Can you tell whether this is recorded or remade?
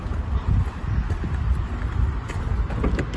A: recorded